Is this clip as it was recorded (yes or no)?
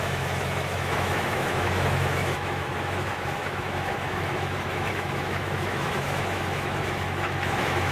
no